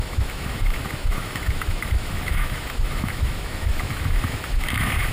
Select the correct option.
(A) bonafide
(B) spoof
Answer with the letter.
B